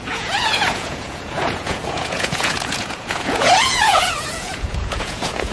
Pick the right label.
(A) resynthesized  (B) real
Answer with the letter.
A